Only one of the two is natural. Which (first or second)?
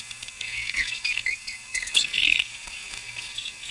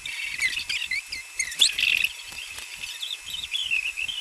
second